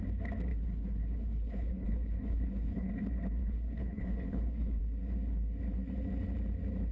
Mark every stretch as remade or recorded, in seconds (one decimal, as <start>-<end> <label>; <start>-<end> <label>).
0.0-0.5 recorded; 0.5-2.9 remade; 2.9-3.4 recorded; 3.4-4.8 remade; 4.8-6.9 recorded